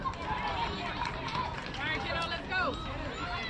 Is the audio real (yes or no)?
yes